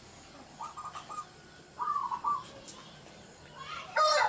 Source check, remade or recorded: recorded